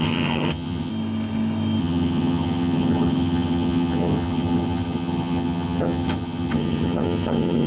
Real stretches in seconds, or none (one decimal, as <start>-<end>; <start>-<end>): 0.9-1.8